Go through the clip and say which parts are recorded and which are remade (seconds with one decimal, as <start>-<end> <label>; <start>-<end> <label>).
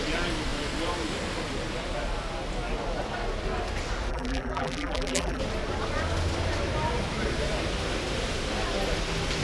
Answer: 0.0-4.1 recorded; 4.1-5.4 remade; 5.4-9.4 recorded